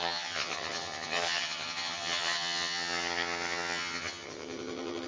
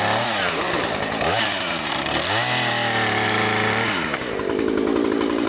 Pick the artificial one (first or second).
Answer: first